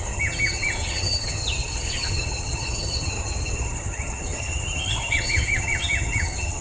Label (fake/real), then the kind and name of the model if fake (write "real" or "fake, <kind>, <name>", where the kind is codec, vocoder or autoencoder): fake, vocoder, HiFi-GAN